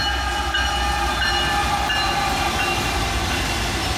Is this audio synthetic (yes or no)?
no